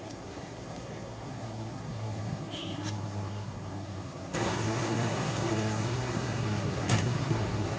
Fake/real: fake